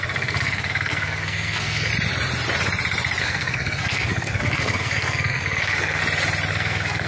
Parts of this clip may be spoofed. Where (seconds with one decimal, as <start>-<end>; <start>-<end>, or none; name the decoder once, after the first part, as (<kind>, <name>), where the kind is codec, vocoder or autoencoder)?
0.0-1.9 (codec, SNAC); 3.2-6.0; 6.5-7.1